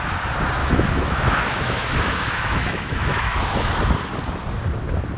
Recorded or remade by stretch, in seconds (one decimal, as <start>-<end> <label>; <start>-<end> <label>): 0.0-0.6 recorded; 0.6-3.7 remade; 3.7-5.2 recorded